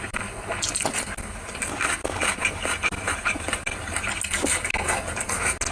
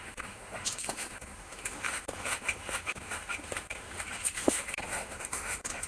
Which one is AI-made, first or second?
second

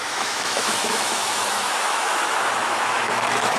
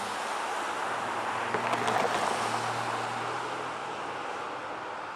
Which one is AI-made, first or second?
first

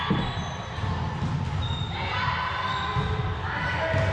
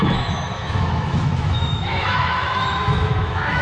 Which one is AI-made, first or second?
second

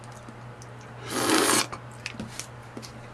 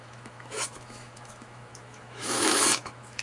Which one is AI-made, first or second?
second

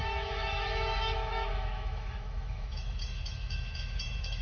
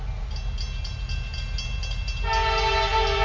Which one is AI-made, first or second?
first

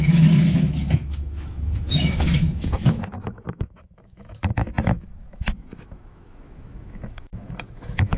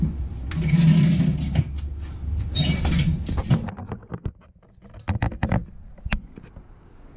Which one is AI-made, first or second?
first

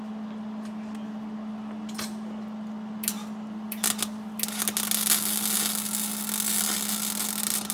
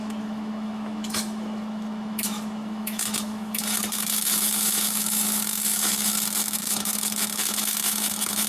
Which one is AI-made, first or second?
second